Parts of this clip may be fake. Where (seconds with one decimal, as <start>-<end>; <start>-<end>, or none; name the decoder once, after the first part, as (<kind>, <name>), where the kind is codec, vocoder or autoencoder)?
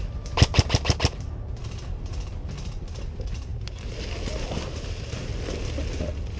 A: none